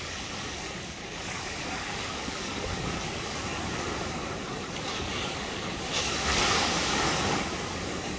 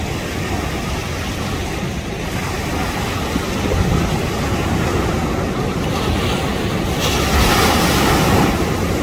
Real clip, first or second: second